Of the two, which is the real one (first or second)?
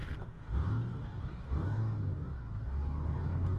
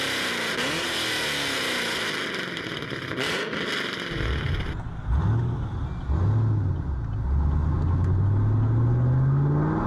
second